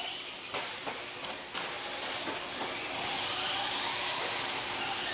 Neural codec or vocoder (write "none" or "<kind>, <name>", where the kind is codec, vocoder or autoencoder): vocoder, BigVGAN v2